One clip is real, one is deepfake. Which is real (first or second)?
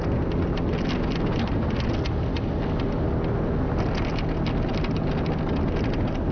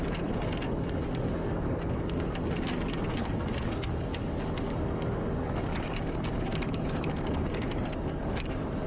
first